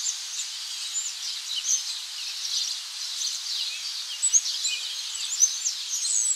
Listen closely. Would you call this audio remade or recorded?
recorded